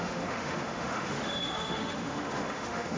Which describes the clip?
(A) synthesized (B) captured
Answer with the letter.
A